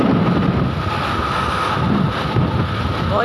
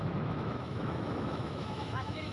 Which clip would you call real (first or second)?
first